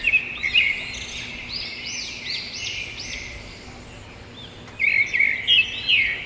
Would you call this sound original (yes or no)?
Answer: yes